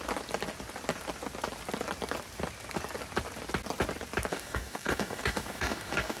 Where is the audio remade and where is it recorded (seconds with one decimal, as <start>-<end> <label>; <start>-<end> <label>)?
0.0-4.3 recorded; 4.3-6.2 remade